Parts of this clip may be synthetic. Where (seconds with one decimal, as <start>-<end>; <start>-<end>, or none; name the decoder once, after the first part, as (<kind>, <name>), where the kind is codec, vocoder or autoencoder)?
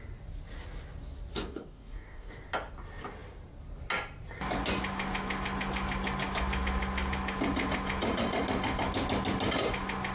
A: 1.4-2.3 (codec, DAC)